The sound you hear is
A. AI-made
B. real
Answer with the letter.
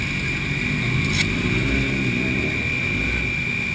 B